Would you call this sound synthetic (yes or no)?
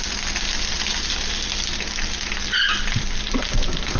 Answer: no